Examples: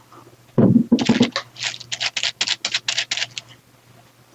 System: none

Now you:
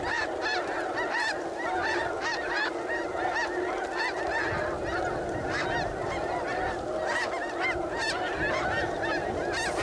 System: none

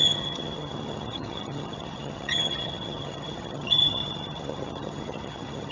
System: vocoder, HiFi-GAN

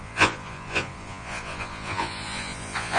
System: vocoder, Vocos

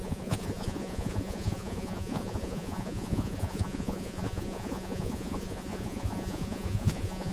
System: vocoder, Vocos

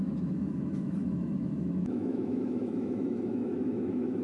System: autoencoder, DAC-VAE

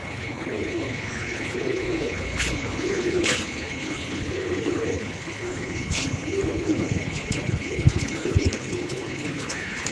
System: codec, HILCodec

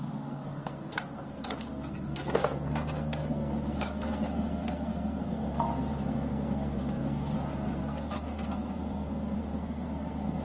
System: codec, SNAC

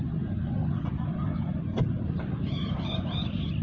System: none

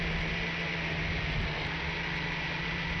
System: none